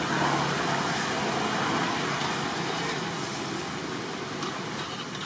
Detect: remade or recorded recorded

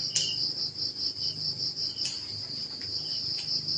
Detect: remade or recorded recorded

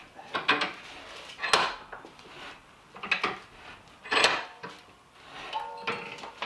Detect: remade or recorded recorded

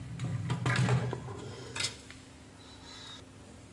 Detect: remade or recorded recorded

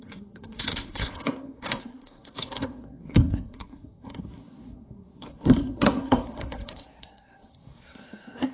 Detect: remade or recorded remade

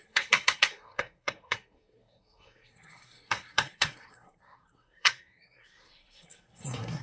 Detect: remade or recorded remade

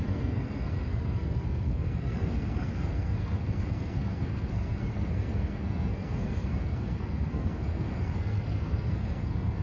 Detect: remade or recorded remade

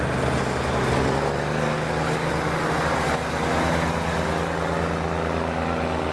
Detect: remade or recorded recorded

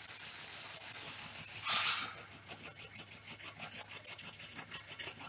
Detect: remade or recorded recorded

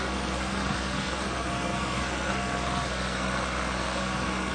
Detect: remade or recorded remade